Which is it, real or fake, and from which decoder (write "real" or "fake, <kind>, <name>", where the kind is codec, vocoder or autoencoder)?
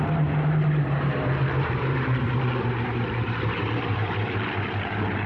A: fake, vocoder, BigVGAN v2